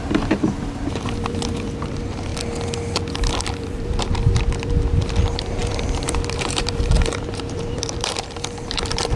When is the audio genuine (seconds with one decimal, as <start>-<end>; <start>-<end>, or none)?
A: 2.3-3.6